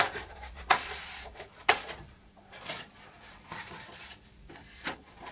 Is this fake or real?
fake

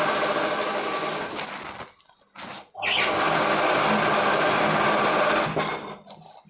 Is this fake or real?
real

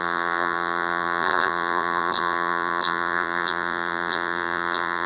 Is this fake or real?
fake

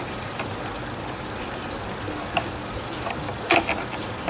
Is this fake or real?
real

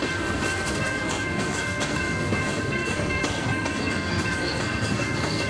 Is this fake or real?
fake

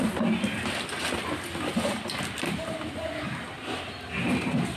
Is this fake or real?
real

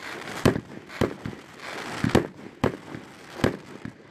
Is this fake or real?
real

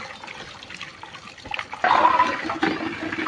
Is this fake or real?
real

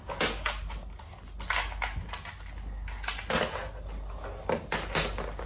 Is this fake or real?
real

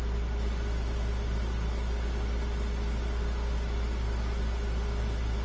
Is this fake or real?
real